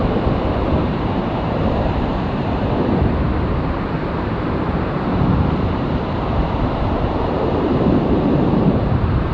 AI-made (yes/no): yes